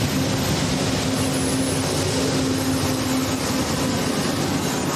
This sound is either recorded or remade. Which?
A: recorded